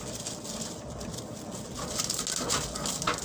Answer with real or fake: real